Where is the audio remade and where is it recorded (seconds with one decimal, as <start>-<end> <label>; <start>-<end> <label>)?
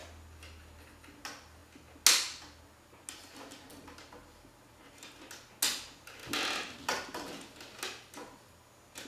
0.0-9.1 recorded